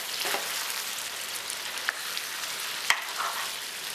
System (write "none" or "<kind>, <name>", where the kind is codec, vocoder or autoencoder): none